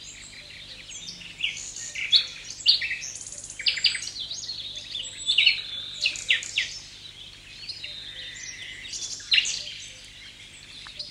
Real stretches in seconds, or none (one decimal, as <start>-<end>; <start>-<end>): 0.0-11.1

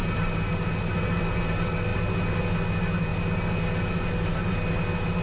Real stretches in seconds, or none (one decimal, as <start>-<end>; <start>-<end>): 0.0-5.2

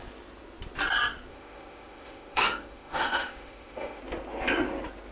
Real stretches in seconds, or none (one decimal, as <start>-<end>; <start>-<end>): 0.0-1.3; 4.0-5.1

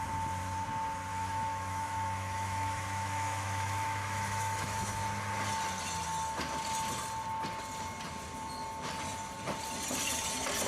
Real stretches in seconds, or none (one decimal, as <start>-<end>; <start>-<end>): 0.0-1.1; 5.0-10.7

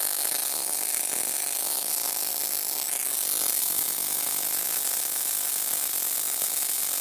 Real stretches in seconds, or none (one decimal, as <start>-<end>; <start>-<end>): 2.3-3.6